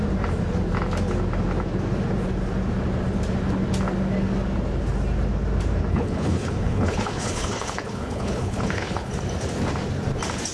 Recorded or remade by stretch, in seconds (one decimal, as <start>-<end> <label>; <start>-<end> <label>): 0.0-5.9 recorded; 5.9-9.1 remade; 9.1-10.5 recorded